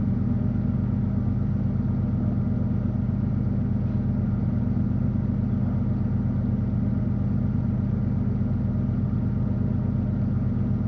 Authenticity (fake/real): real